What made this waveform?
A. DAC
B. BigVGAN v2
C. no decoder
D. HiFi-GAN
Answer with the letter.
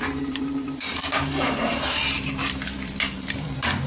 B